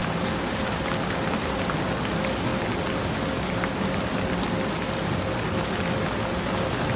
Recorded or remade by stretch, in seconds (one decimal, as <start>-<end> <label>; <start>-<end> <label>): 0.0-7.0 recorded